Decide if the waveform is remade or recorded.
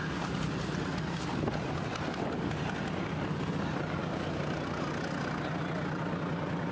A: recorded